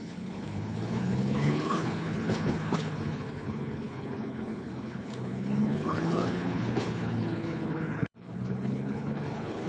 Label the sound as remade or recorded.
remade